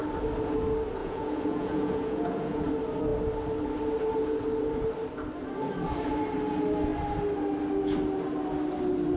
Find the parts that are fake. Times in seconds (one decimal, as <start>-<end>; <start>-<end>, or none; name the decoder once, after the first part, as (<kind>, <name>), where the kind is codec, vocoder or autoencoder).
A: 1.0-2.7 (vocoder, Vocos)